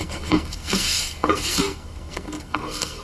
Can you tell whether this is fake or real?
fake